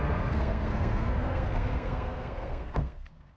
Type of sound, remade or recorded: remade